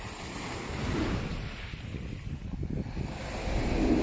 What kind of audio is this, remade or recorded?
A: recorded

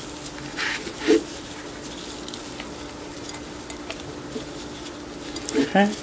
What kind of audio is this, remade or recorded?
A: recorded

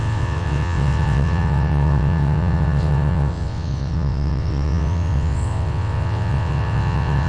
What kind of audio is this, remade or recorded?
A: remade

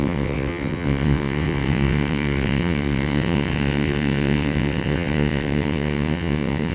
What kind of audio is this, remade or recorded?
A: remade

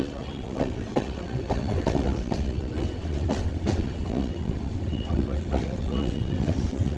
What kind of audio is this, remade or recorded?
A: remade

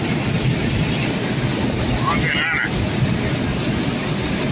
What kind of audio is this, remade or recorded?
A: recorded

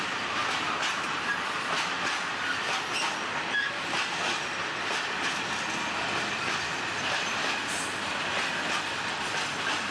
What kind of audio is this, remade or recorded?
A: recorded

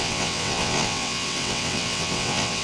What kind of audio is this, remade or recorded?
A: remade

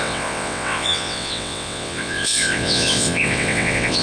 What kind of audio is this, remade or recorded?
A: remade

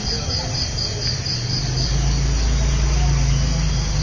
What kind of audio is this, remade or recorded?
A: recorded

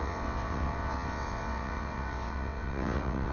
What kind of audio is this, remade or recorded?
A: remade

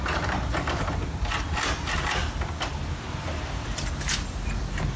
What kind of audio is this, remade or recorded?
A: recorded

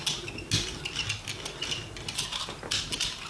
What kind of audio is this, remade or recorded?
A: recorded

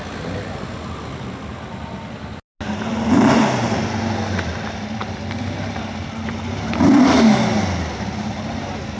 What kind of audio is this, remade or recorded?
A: recorded